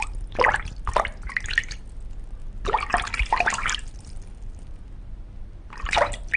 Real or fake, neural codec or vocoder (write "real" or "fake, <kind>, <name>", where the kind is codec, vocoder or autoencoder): real